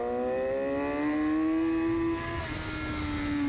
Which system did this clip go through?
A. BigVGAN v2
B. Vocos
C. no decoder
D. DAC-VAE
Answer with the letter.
C